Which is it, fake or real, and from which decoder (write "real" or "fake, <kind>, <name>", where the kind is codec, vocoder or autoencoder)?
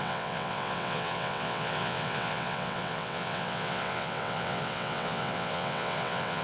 fake, vocoder, WaveNeXt